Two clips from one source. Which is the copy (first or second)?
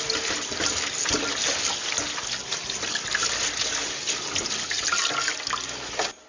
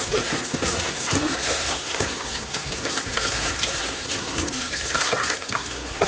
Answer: second